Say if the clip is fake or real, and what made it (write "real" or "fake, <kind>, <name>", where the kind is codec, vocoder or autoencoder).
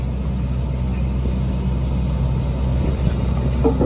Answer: real